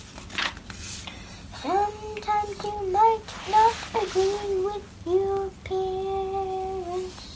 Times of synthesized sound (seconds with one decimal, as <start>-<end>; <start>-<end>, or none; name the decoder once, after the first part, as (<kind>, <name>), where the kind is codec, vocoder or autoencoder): none